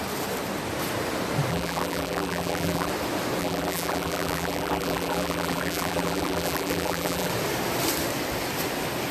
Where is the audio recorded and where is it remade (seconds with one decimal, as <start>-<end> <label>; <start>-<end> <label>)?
0.0-1.5 recorded; 1.5-2.9 remade; 2.9-3.4 recorded; 3.4-7.3 remade; 7.3-9.1 recorded